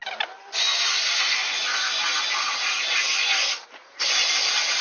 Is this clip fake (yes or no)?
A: no